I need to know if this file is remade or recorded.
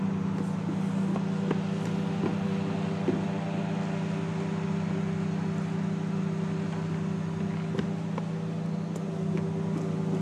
recorded